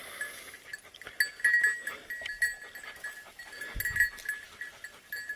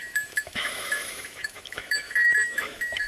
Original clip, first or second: first